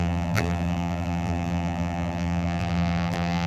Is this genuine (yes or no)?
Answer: no